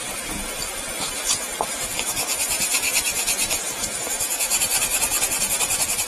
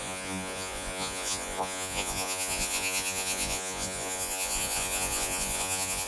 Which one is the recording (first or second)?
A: first